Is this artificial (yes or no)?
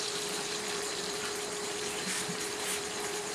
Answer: yes